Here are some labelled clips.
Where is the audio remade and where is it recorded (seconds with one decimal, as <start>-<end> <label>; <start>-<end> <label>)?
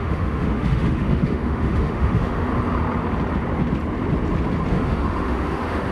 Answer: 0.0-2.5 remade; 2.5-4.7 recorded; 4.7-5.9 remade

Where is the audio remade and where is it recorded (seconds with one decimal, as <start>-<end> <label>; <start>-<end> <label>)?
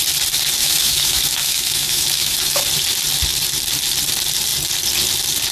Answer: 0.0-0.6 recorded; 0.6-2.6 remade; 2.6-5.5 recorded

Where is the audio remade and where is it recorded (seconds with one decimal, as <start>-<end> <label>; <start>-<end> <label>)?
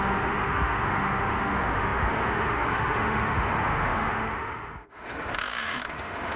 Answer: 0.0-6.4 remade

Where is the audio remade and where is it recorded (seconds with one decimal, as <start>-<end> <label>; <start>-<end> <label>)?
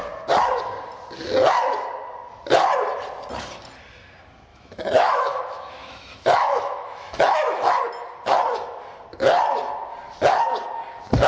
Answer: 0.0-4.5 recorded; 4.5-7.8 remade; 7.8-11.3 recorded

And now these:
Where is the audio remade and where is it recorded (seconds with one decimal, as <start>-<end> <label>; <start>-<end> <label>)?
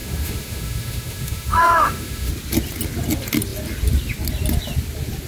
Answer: 0.0-2.3 remade; 2.3-5.3 recorded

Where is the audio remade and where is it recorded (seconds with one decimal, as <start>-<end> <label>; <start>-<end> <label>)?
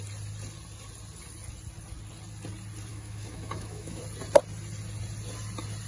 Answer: 0.0-2.9 recorded; 2.9-4.0 remade; 4.0-5.9 recorded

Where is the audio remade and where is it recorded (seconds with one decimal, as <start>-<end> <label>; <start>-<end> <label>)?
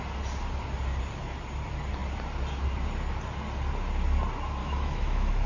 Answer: 0.0-4.6 recorded; 4.6-5.5 remade